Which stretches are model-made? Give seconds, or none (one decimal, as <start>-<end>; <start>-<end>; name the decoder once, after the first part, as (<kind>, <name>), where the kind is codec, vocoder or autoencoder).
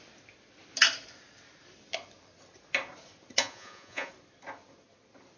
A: 3.4-4.1 (vocoder, Vocos)